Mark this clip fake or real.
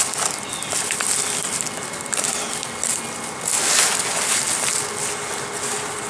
real